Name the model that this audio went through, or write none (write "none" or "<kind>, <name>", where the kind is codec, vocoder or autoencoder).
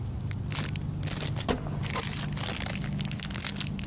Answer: none